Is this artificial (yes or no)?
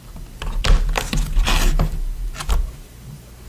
no